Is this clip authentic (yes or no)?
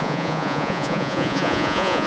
no